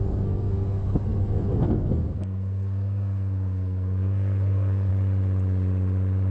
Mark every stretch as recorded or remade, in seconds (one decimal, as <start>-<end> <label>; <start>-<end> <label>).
0.0-4.9 remade; 4.9-6.3 recorded